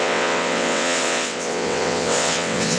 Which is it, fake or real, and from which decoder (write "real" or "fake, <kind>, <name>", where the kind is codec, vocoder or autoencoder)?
fake, vocoder, WaveNeXt